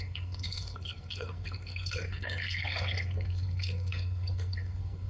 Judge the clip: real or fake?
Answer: fake